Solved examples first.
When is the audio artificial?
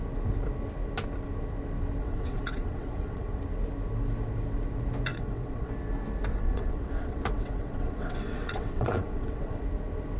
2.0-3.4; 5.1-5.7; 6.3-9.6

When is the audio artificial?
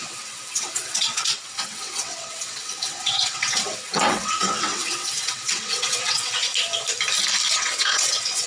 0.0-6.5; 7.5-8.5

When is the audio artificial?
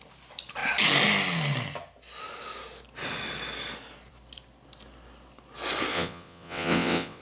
5.9-7.2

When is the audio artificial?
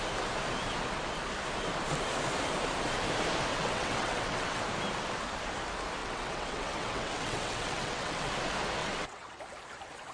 3.5-4.6; 6.0-8.3; 8.8-9.4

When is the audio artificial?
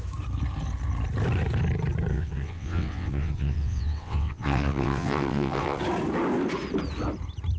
2.1-5.8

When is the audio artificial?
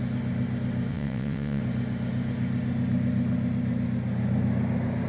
0.9-1.6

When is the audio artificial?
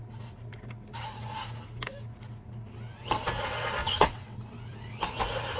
3.8-4.4